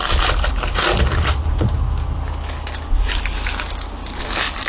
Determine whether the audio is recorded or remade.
recorded